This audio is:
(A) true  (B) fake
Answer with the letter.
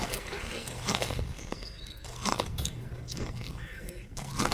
B